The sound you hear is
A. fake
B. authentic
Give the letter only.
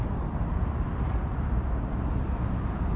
B